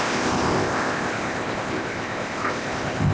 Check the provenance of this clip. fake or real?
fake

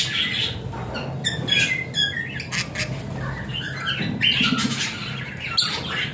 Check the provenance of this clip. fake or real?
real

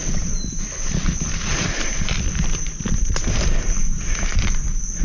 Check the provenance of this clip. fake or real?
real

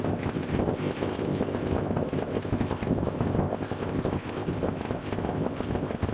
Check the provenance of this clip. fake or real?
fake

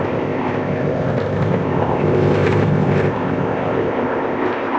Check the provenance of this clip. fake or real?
fake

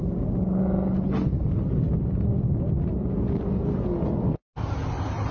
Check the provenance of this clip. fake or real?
real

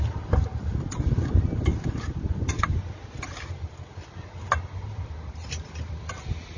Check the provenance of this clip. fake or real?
real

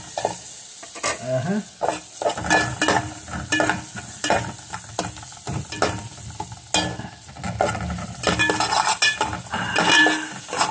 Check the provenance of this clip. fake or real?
real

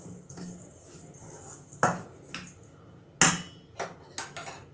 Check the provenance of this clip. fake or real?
real